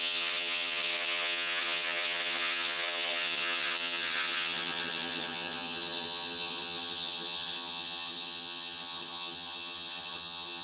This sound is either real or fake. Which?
fake